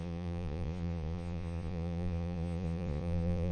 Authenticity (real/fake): fake